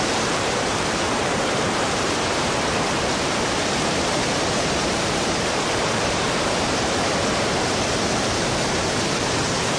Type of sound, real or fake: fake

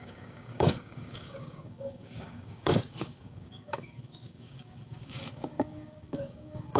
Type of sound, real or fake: fake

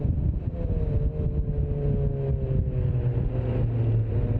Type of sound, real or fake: real